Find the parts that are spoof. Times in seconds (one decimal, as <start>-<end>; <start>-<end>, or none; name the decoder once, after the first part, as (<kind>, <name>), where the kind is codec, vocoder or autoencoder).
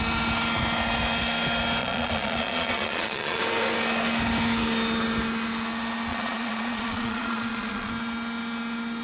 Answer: 1.8-3.4 (vocoder, Vocos); 6.1-7.9